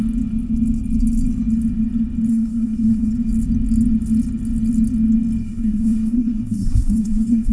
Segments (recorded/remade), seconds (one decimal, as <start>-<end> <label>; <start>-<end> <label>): 0.0-2.3 recorded; 2.3-3.1 remade; 3.1-5.4 recorded; 5.4-7.5 remade